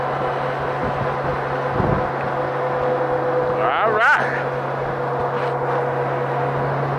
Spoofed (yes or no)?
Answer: no